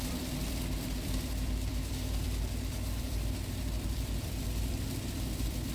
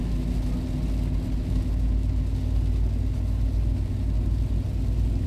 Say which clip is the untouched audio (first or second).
second